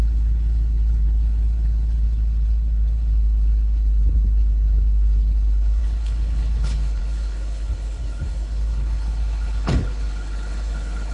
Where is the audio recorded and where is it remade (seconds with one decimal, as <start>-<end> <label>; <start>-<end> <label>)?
0.0-11.1 remade